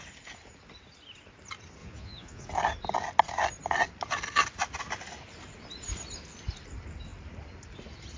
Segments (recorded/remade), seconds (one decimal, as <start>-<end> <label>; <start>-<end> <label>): 0.0-1.8 recorded; 1.8-2.5 remade; 2.5-8.2 recorded